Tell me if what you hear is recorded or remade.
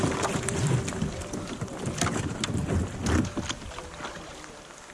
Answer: recorded